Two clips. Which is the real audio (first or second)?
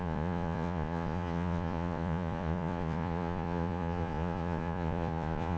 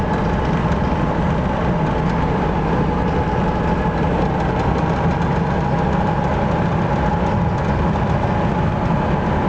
second